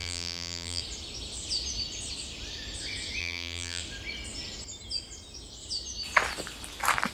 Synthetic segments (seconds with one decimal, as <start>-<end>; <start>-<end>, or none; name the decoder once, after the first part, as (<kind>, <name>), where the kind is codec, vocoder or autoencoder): 0.0-0.8 (vocoder, BigVGAN v2); 3.2-3.8